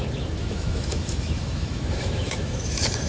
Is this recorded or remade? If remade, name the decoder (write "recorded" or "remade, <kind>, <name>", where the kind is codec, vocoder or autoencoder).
remade, autoencoder, DAC-VAE